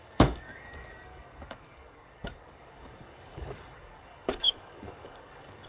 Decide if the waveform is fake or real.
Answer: fake